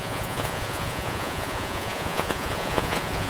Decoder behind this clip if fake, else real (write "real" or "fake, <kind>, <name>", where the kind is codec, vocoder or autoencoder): fake, vocoder, Vocos